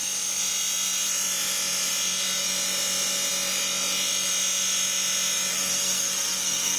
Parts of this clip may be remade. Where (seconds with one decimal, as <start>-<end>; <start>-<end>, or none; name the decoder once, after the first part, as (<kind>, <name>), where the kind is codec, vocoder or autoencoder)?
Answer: 5.5-6.8 (codec, SNAC)